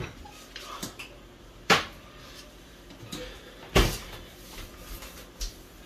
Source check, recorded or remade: recorded